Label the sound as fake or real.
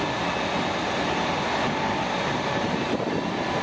real